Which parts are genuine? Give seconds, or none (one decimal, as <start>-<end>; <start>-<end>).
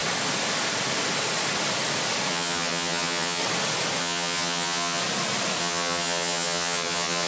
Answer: 0.0-2.3; 3.4-4.0; 5.0-5.6